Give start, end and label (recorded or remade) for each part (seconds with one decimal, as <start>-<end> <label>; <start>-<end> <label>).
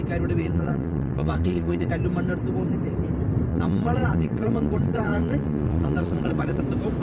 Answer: 0.0-0.4 recorded; 0.4-1.9 remade; 1.9-3.5 recorded; 3.5-6.6 remade; 6.6-7.0 recorded